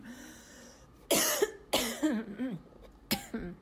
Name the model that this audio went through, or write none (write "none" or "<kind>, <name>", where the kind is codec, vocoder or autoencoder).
none